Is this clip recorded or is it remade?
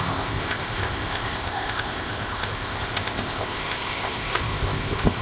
remade